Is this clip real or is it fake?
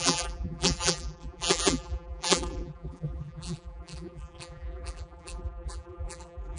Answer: fake